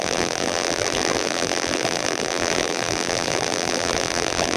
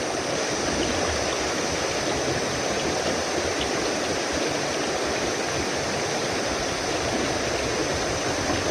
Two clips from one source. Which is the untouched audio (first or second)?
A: second